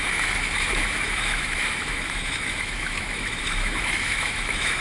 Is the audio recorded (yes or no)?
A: no